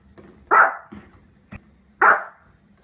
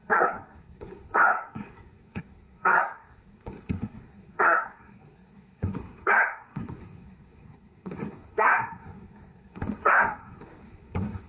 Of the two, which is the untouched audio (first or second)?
first